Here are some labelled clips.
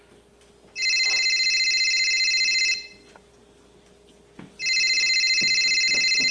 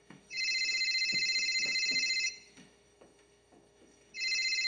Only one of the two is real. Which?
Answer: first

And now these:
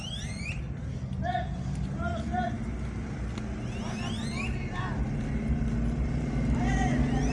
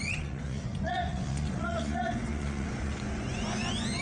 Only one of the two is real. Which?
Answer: first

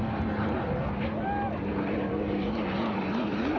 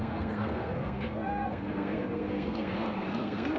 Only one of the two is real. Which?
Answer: first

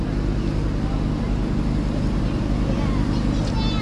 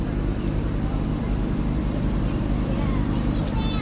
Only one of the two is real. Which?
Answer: first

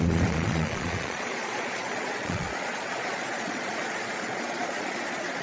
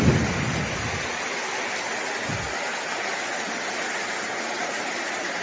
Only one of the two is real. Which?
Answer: second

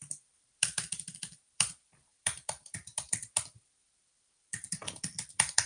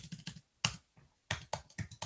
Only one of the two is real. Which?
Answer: second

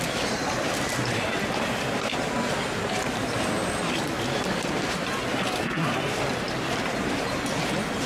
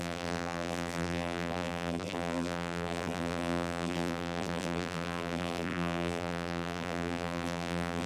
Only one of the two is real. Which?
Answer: first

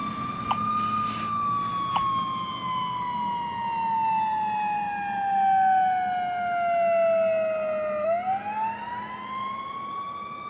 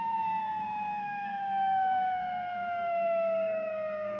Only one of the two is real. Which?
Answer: first